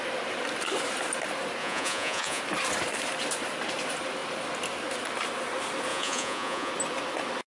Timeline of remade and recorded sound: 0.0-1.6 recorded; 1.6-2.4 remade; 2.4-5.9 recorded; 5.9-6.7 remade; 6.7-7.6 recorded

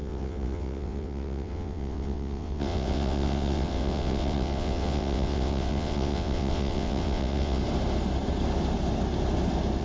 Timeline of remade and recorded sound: 0.0-7.6 remade; 7.6-9.8 recorded

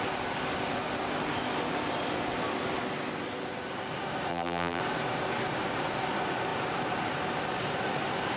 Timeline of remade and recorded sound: 0.0-4.3 recorded; 4.3-4.8 remade; 4.8-8.4 recorded

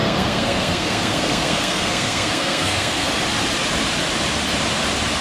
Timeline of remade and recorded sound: 0.0-3.1 remade; 3.1-5.2 recorded